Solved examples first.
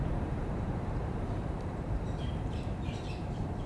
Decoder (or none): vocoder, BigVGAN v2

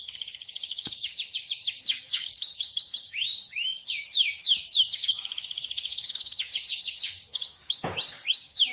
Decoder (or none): codec, DAC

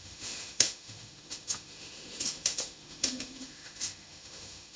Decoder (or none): autoencoder, DAC-VAE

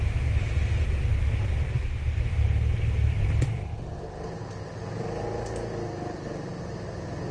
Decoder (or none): none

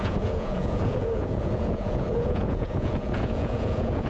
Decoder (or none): vocoder, Vocos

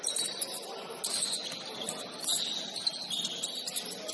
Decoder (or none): none